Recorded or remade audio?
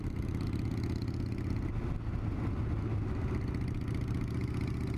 recorded